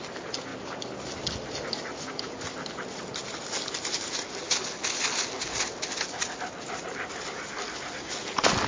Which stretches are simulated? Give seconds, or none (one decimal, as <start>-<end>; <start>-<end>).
none